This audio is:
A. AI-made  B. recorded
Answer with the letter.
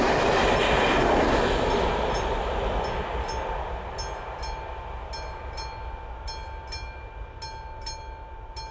B